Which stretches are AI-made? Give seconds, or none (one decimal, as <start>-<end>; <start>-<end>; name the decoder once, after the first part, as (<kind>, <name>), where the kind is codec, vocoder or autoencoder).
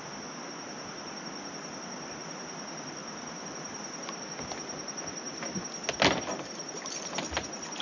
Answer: none